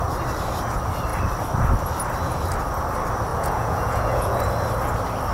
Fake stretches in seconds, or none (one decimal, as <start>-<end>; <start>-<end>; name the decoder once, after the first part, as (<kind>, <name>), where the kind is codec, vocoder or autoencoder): 3.3-4.4 (vocoder, Vocos)